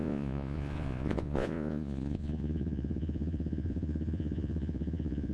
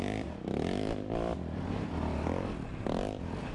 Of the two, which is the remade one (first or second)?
first